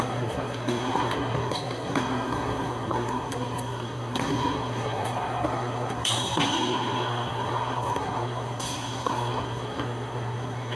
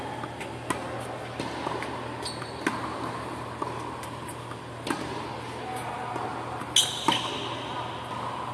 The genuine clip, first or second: second